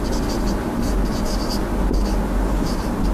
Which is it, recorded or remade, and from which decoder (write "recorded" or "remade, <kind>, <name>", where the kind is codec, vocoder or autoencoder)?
recorded